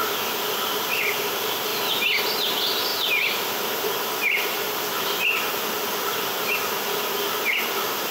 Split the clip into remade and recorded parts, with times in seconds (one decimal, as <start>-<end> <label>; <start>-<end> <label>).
0.0-1.7 recorded; 1.7-2.3 remade; 2.3-8.1 recorded